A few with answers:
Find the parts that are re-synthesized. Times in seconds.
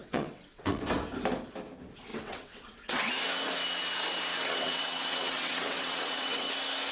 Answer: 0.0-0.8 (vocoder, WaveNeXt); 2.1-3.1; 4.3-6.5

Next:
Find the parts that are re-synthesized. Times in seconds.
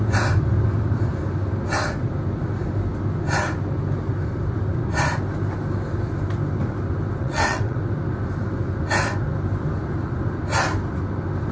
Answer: 7.2-7.8 (vocoder, WaveNeXt)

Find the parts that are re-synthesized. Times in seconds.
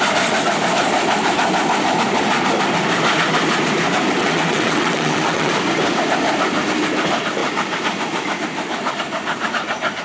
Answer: 4.2-5.5 (vocoder, WaveNeXt)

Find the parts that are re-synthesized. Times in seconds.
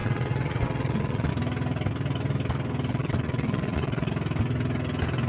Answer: 0.0-1.3 (vocoder, WaveNeXt); 2.9-4.1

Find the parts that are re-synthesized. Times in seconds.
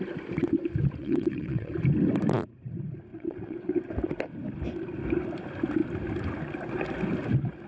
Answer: 1.0-1.7 (vocoder, WaveNeXt); 3.1-3.8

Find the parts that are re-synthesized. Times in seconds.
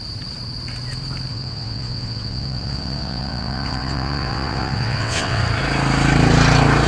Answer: 1.3-5.4 (vocoder, WaveNeXt)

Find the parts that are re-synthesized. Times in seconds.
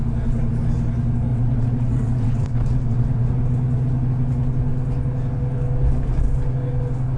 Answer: 1.3-3.4 (vocoder, WaveNeXt)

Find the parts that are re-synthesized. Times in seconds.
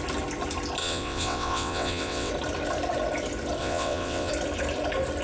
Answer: 0.8-2.3 (vocoder, WaveNeXt); 3.6-4.3